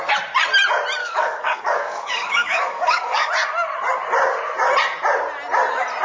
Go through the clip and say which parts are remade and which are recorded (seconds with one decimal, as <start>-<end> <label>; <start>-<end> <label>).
0.0-1.0 recorded; 1.0-3.3 remade; 3.3-6.0 recorded